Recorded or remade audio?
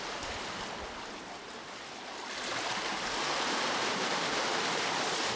recorded